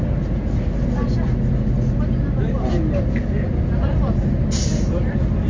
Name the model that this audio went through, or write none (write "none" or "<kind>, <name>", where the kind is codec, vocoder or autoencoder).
none